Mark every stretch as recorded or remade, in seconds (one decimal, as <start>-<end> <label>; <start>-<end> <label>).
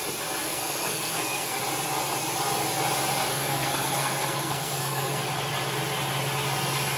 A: 0.0-0.4 recorded; 0.4-1.6 remade; 1.6-3.3 recorded; 3.3-5.2 remade; 5.2-7.0 recorded